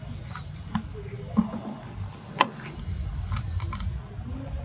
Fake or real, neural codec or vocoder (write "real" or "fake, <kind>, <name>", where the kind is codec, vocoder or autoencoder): real